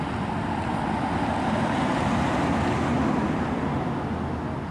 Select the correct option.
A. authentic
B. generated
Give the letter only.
A